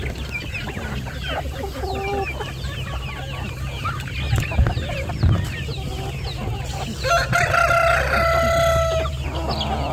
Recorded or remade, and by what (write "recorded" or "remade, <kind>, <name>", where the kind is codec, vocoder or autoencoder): recorded